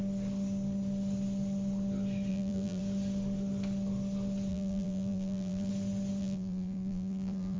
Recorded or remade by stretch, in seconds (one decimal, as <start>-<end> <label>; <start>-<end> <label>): 0.0-2.3 recorded; 2.3-2.8 remade; 2.8-4.5 recorded; 4.5-5.7 remade; 5.7-6.2 recorded; 6.2-7.6 remade